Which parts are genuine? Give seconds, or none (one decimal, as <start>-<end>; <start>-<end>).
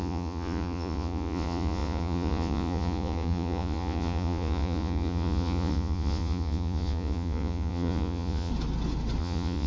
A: 8.5-9.2